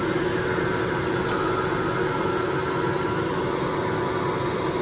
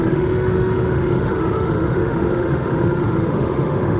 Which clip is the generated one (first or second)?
second